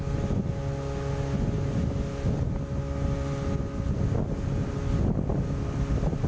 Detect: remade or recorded recorded